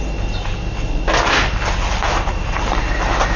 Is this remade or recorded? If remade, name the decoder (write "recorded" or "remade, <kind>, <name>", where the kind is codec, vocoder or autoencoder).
recorded